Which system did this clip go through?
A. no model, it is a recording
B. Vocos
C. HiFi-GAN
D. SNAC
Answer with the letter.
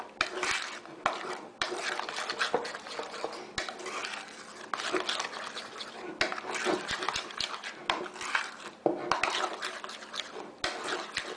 A